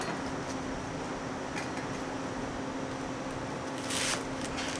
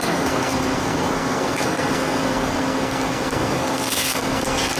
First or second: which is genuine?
first